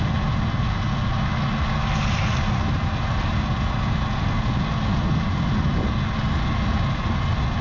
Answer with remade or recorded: recorded